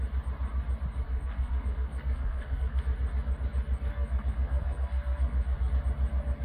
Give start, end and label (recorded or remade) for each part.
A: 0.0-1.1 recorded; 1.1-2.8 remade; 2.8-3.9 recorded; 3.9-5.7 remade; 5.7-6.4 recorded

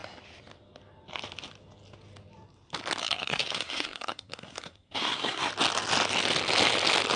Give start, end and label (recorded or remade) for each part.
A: 0.0-3.0 recorded; 3.0-5.5 remade; 5.5-7.2 recorded

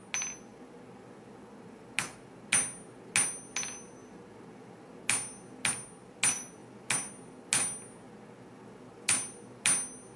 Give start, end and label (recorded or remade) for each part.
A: 0.0-10.2 recorded

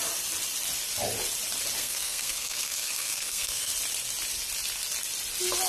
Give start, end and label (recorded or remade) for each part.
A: 0.0-1.8 recorded; 1.8-3.7 remade; 3.7-5.7 recorded

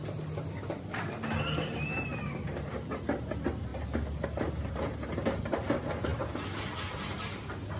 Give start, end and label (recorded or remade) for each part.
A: 0.0-7.8 recorded

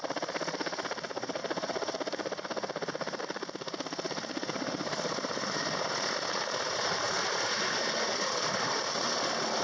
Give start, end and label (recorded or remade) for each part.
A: 0.0-9.6 recorded

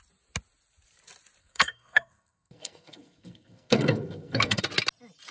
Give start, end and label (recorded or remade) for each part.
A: 0.0-1.4 recorded; 1.4-4.6 remade; 4.6-5.3 recorded

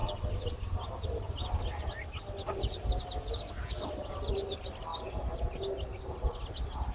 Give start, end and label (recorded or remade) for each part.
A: 0.0-6.9 recorded